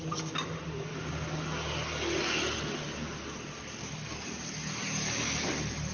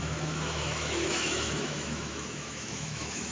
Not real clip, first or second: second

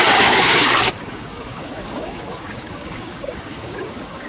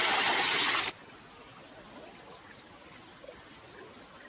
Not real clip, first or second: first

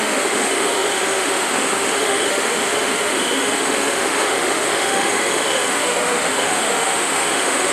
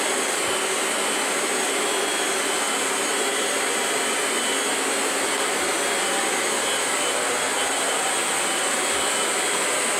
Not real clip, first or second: first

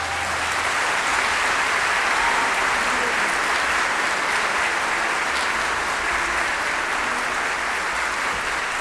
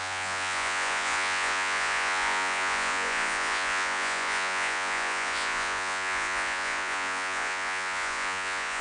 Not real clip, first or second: second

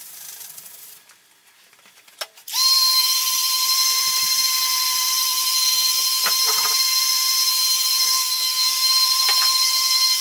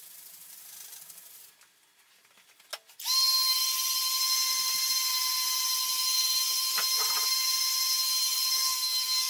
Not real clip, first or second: first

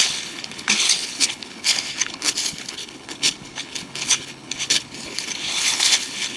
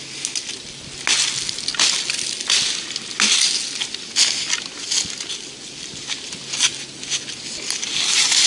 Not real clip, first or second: first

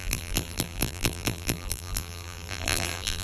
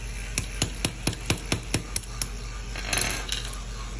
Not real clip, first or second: first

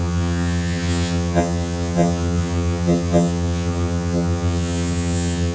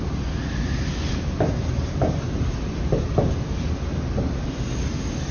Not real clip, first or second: first